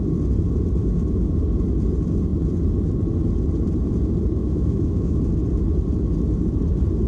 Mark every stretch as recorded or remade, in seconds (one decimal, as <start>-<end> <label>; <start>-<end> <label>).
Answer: 0.0-0.8 recorded; 0.8-1.3 remade; 1.3-4.4 recorded; 4.4-5.2 remade; 5.2-7.1 recorded